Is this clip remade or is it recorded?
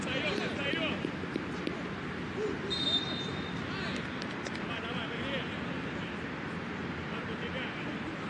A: recorded